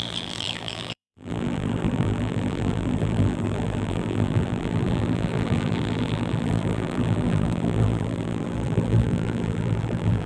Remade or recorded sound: remade